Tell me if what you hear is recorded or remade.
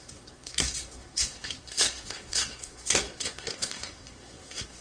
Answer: remade